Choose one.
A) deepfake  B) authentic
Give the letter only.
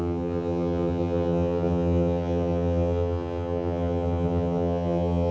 A